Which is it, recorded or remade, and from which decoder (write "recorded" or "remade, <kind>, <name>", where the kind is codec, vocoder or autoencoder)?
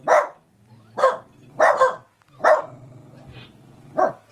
recorded